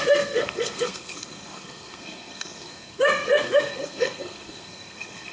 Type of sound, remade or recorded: remade